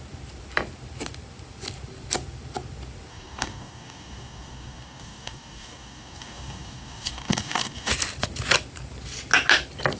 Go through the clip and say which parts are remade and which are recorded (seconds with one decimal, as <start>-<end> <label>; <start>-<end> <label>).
0.0-3.1 recorded; 3.1-7.9 remade; 7.9-10.0 recorded